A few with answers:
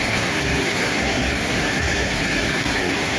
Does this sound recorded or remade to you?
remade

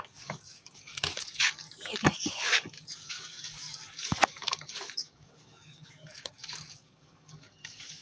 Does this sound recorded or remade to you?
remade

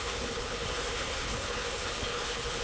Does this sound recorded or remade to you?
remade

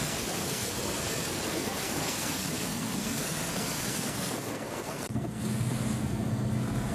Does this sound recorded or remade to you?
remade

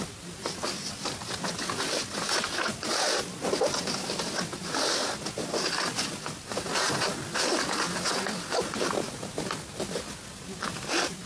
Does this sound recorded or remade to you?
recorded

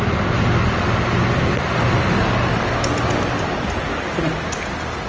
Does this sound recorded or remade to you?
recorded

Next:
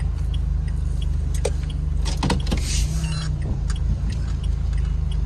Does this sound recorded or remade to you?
recorded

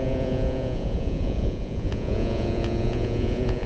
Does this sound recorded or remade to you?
remade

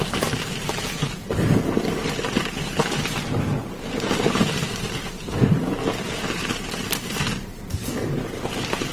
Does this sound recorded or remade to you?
remade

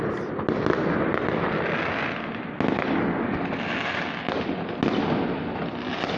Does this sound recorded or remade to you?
recorded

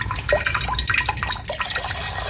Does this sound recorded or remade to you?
recorded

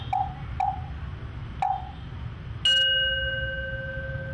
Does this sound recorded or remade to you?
recorded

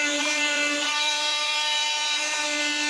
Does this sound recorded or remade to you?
remade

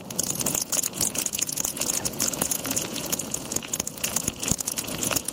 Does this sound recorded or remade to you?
remade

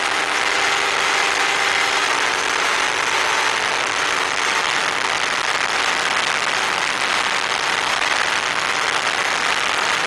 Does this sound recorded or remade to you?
recorded